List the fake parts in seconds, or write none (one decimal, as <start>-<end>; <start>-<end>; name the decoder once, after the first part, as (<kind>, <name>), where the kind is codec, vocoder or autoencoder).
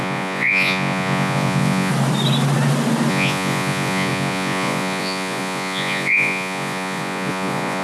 0.0-1.9 (vocoder, Vocos); 3.1-7.8